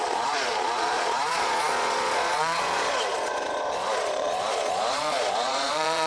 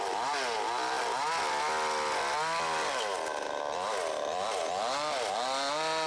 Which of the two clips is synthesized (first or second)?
first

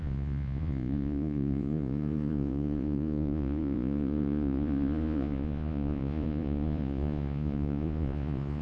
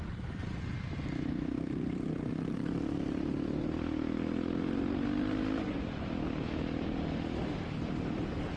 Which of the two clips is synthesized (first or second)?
first